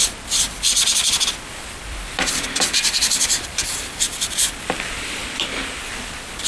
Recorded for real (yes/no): no